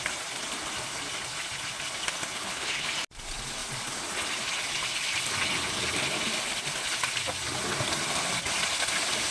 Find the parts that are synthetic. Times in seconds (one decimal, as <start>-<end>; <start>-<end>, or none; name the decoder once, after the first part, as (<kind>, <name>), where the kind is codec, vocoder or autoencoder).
2.3-2.9 (codec, HILCodec)